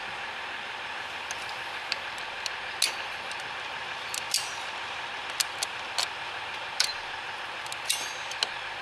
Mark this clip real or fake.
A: real